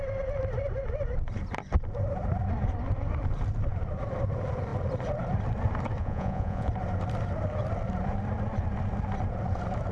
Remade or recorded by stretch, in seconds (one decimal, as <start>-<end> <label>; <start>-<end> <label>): 0.0-6.0 recorded; 6.0-6.7 remade; 6.7-9.9 recorded